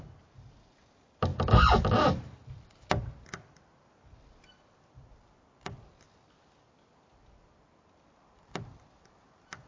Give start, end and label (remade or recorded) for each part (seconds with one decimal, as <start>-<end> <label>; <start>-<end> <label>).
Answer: 0.0-9.7 recorded